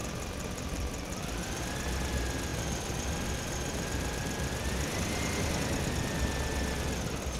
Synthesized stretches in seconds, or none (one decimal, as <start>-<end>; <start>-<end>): 0.0-1.6; 2.5-5.5